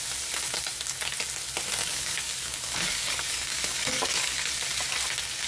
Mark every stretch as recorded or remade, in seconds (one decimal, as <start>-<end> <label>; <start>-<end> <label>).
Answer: 0.0-1.8 recorded; 1.8-4.5 remade; 4.5-5.5 recorded